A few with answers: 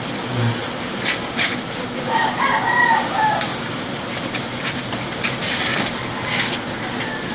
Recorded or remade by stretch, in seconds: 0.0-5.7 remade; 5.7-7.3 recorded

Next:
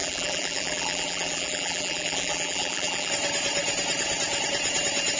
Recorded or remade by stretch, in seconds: 0.0-3.1 remade; 3.1-5.2 recorded

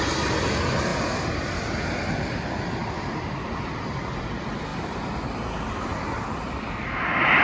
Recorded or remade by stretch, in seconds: 0.0-0.9 remade; 0.9-4.1 recorded; 4.1-7.4 remade

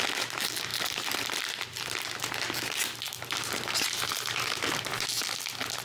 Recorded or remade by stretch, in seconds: 0.0-0.7 recorded; 0.7-4.2 remade; 4.2-5.8 recorded

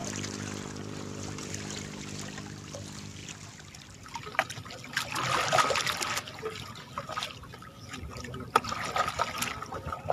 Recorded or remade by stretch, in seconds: 0.0-1.5 remade; 1.5-10.1 recorded

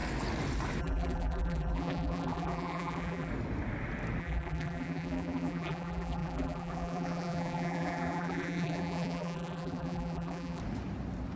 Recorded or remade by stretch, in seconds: 0.0-0.8 recorded; 0.8-3.3 remade; 3.3-4.2 recorded; 4.2-10.6 remade; 10.6-11.4 recorded

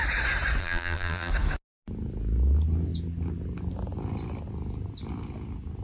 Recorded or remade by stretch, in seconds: 0.0-0.6 recorded; 0.6-1.3 remade; 1.3-5.8 recorded

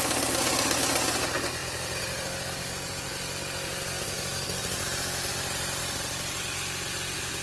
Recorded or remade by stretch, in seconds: 0.0-7.4 recorded